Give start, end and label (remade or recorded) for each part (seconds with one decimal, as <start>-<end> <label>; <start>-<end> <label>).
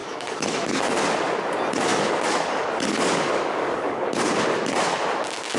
0.0-0.7 remade; 0.7-1.9 recorded; 1.9-4.3 remade; 4.3-5.6 recorded